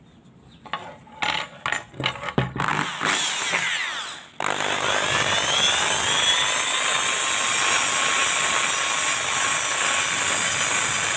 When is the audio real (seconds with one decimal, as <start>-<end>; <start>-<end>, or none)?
0.0-11.2